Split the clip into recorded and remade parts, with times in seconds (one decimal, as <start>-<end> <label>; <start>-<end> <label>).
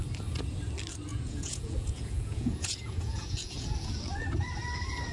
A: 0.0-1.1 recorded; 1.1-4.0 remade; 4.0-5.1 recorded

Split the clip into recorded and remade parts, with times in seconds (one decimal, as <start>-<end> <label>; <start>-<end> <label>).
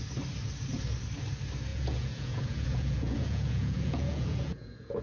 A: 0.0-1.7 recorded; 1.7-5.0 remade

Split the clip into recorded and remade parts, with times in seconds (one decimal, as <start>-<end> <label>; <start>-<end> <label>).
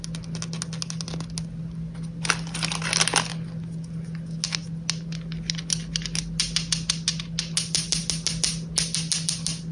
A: 0.0-9.7 recorded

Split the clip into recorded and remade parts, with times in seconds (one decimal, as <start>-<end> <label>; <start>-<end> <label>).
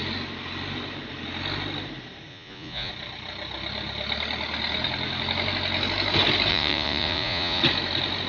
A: 0.0-2.3 recorded; 2.3-2.9 remade; 2.9-6.5 recorded; 6.5-7.6 remade; 7.6-8.3 recorded